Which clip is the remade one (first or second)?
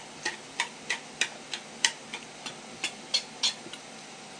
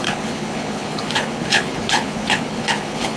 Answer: second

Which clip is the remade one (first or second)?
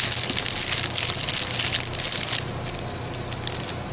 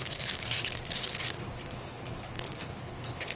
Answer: second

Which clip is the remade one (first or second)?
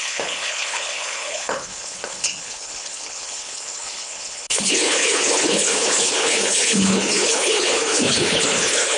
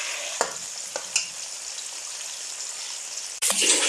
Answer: first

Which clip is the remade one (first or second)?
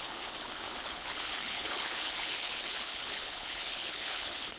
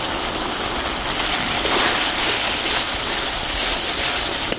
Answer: first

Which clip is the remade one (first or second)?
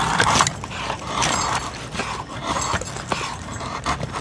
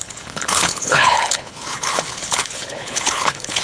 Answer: second